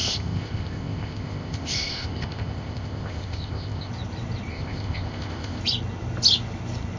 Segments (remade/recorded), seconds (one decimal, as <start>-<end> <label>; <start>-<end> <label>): 0.0-3.9 remade; 3.9-4.5 recorded; 4.5-5.6 remade; 5.6-7.0 recorded